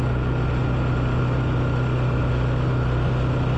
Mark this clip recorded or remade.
recorded